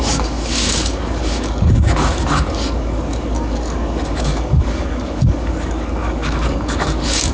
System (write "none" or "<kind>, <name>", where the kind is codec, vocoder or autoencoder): codec, DAC